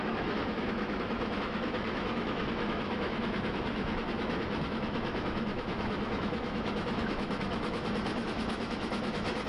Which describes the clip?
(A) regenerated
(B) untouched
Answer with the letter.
A